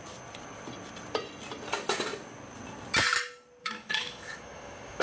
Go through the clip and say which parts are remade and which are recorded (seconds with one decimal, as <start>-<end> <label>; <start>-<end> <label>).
0.0-3.6 recorded; 3.6-5.0 remade